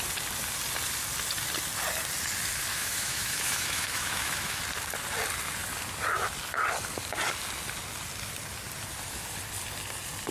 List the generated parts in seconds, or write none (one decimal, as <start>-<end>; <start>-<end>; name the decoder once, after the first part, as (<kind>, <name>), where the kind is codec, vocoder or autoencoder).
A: 2.7-4.6 (autoencoder, DAC-VAE)